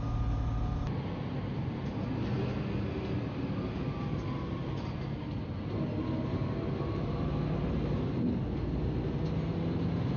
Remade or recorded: recorded